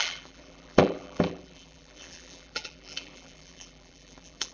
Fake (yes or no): yes